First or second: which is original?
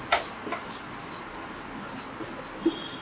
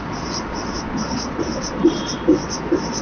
first